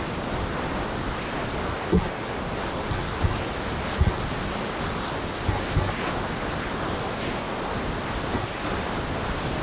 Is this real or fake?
real